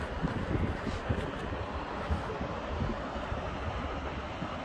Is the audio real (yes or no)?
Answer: yes